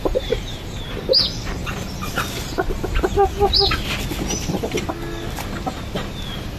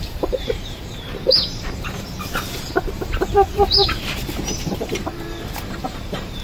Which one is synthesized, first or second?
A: second